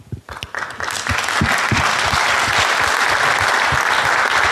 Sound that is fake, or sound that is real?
real